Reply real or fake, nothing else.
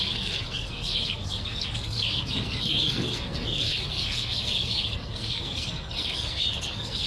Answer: fake